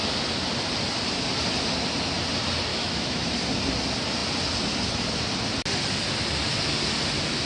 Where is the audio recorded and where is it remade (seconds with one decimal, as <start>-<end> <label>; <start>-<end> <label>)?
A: 0.0-2.7 recorded; 2.7-3.3 remade; 3.3-7.5 recorded